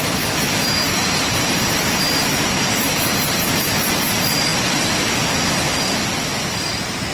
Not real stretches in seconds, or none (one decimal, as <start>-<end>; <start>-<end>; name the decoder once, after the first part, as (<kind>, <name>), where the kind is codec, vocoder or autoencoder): none